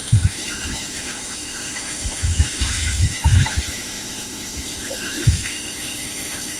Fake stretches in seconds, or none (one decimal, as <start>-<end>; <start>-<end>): 0.0-6.6